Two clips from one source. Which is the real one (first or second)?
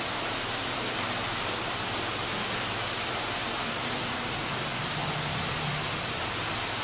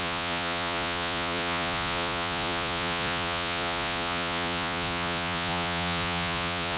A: first